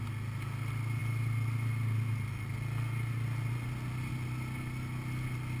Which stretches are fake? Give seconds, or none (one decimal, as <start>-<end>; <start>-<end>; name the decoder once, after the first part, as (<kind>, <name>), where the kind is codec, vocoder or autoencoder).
none